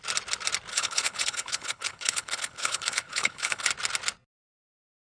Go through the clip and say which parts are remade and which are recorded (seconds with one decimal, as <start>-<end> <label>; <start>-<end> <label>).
0.0-0.7 recorded; 0.7-3.7 remade; 3.7-5.0 recorded